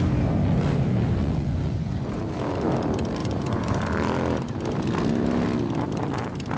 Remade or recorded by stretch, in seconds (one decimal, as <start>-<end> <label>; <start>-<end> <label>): 0.0-1.2 recorded; 1.2-2.2 remade; 2.2-3.2 recorded; 3.2-3.8 remade; 3.8-6.6 recorded